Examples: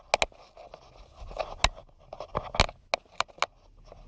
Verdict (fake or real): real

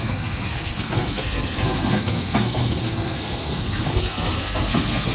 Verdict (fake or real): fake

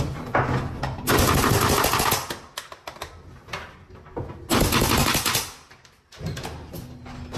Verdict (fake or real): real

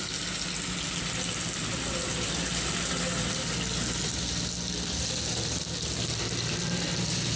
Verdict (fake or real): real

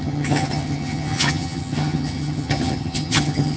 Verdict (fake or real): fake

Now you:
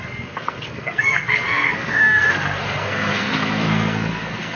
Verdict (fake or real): fake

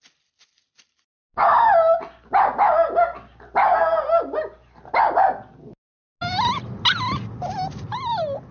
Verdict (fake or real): real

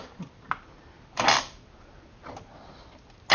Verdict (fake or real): real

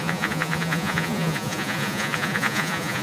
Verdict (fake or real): fake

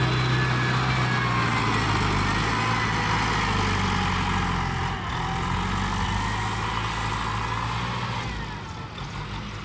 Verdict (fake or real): real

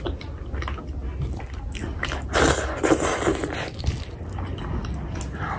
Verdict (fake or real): real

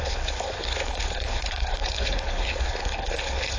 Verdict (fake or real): fake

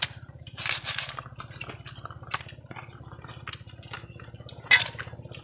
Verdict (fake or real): real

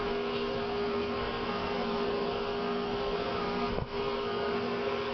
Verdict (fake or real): fake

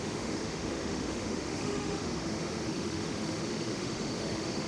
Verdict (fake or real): fake